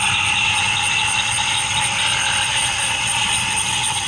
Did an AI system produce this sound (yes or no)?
no